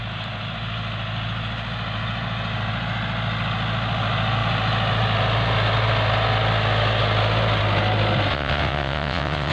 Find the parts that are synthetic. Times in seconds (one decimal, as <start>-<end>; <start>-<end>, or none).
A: 8.3-9.5